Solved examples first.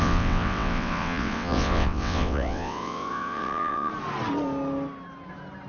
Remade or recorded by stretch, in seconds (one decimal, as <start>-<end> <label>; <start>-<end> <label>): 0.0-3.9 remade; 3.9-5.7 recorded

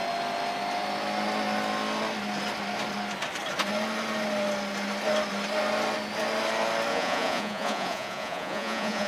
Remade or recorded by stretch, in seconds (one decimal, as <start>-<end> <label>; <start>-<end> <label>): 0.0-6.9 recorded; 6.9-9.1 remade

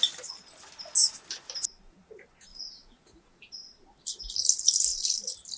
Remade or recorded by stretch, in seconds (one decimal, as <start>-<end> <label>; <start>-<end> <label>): 0.0-2.5 recorded; 2.5-3.4 remade; 3.4-5.6 recorded

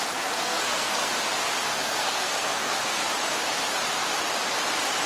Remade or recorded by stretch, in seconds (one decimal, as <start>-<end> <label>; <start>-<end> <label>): 0.0-1.1 remade; 1.1-1.6 recorded; 1.6-3.0 remade; 3.0-5.1 recorded

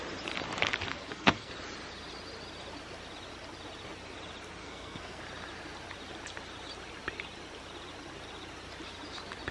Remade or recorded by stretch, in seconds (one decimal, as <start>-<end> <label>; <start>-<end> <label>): 0.0-0.9 recorded; 0.9-1.5 remade; 1.5-4.6 recorded; 4.6-5.2 remade; 5.2-9.5 recorded